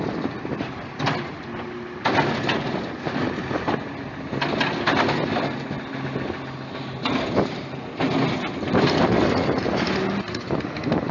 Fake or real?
real